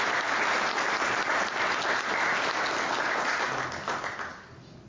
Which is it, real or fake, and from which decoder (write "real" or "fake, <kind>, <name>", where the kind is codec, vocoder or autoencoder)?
real